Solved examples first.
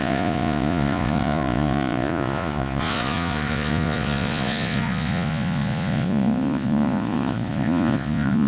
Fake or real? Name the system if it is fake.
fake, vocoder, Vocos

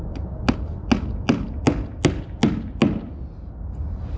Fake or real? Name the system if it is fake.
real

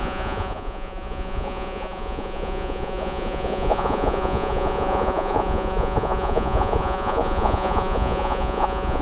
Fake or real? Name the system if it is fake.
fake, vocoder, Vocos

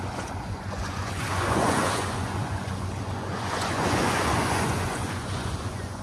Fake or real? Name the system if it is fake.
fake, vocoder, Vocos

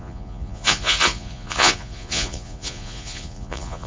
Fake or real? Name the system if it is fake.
fake, vocoder, Vocos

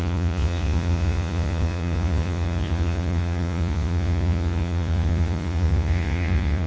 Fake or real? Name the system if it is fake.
fake, vocoder, Vocos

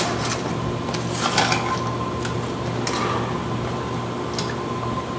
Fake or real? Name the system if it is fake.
real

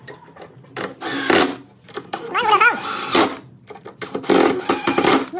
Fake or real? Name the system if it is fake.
real